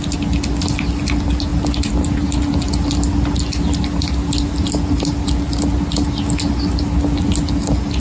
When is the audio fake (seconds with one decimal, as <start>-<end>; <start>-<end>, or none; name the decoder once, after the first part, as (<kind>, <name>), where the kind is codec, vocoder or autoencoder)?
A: none